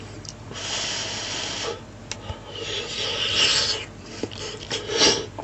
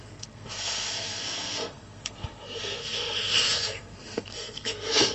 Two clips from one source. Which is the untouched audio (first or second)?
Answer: first